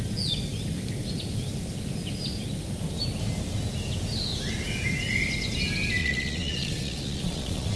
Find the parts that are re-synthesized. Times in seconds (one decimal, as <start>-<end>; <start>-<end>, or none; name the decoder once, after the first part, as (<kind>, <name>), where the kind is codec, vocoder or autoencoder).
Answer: 6.0-7.8 (vocoder, Vocos)